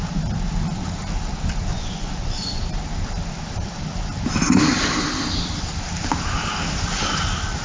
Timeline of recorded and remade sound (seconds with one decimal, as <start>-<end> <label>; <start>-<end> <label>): 0.0-1.7 recorded; 1.7-2.6 remade; 2.6-7.6 recorded